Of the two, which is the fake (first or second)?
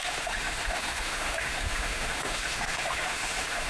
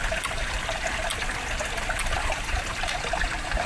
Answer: first